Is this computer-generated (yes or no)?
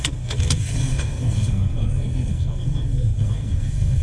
yes